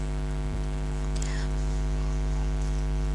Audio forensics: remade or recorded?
recorded